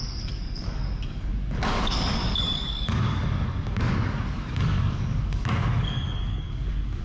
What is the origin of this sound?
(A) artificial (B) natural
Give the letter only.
A